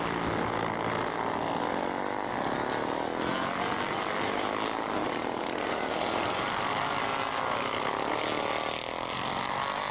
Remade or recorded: recorded